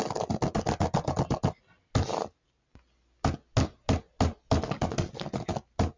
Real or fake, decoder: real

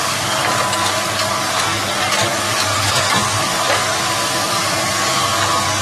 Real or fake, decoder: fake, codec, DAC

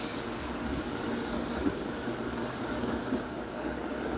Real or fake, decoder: fake, codec, DAC